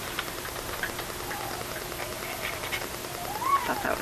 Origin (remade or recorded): recorded